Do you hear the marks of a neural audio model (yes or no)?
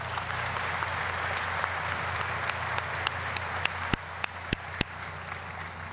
no